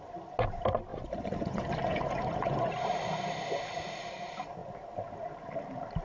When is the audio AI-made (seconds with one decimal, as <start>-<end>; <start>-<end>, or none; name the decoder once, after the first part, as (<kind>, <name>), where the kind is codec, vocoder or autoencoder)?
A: 0.9-2.7 (vocoder, Vocos)